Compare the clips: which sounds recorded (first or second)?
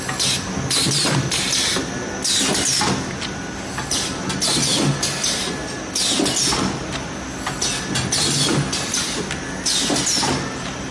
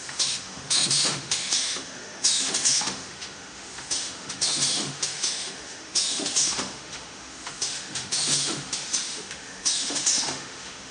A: first